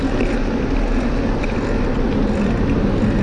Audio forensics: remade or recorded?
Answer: recorded